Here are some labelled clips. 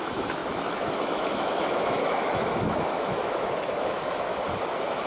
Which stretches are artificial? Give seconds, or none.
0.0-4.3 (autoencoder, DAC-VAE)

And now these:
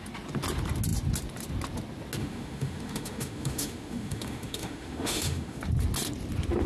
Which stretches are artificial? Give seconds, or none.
2.2-5.6 (autoencoder, DAC-VAE)